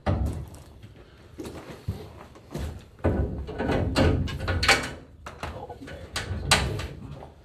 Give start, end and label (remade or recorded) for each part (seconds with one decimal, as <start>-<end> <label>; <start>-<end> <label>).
0.0-1.6 remade; 1.6-7.4 recorded